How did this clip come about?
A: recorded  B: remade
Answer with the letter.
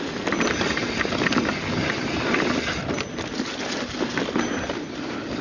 A